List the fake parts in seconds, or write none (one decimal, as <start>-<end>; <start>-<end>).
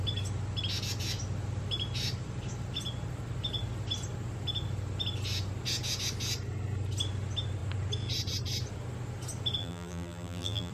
9.6-10.7